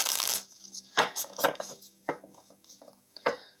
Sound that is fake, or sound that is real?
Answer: fake